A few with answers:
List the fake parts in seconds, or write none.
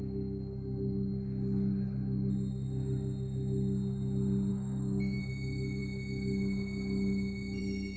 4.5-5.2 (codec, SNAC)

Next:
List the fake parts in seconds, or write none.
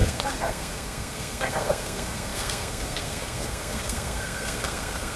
0.0-5.2 (codec, SNAC)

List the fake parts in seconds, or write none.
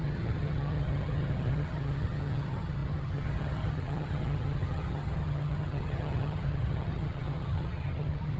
0.0-8.4 (vocoder, HiFi-GAN)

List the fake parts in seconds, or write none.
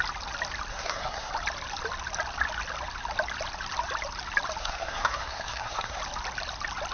0.7-1.3 (codec, SNAC); 4.6-6.0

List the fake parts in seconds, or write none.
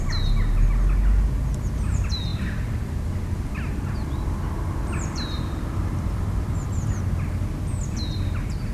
2.3-6.9 (vocoder, BigVGAN v2)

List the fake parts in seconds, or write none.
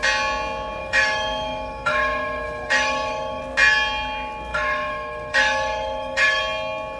0.8-3.4 (autoencoder, DAC-VAE); 4.5-6.4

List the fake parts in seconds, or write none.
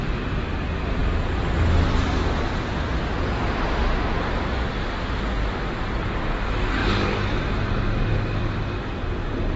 none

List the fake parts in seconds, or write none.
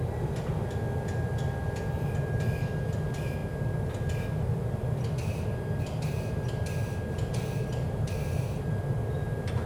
none